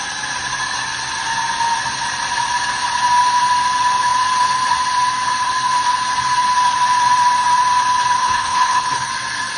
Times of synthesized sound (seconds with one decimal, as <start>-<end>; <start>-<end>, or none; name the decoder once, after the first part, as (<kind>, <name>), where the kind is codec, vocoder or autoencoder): 8.2-9.1 (codec, HILCodec)